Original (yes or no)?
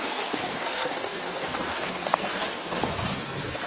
no